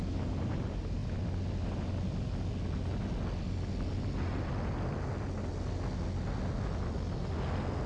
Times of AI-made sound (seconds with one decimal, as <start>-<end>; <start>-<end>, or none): none